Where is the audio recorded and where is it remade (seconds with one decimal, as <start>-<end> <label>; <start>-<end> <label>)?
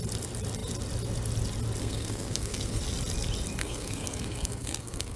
0.0-1.8 recorded; 1.8-2.8 remade; 2.8-3.6 recorded; 3.6-5.2 remade